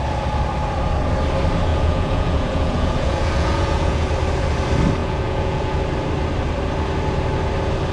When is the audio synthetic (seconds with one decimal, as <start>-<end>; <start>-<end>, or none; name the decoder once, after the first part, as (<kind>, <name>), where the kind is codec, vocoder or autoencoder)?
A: 1.7-4.1 (vocoder, Vocos); 5.0-5.8